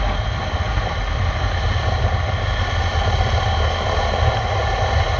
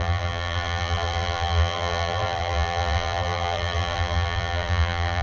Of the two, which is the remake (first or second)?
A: second